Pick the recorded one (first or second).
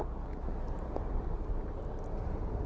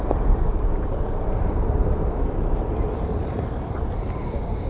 first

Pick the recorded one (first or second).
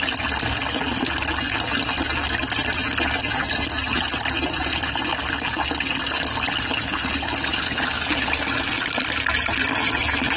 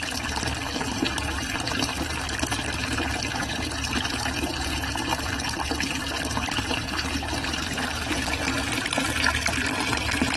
first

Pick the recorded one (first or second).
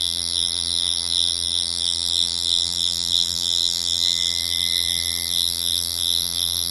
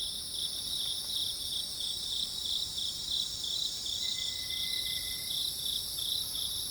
second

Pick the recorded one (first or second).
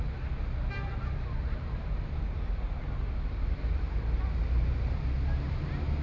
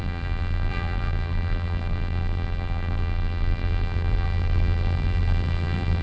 first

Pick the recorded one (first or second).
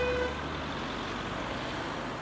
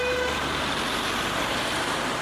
first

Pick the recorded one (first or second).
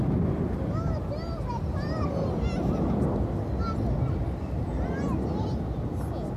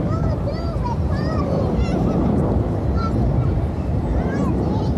first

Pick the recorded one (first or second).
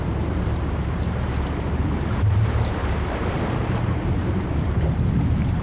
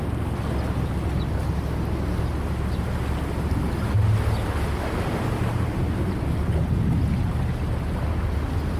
second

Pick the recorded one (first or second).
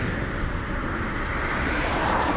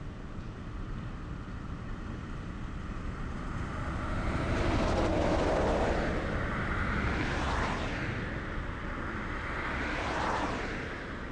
second